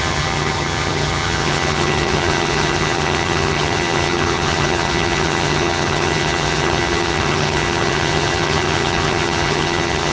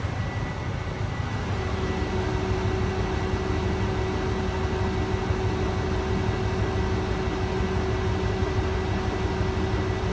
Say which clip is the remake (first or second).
first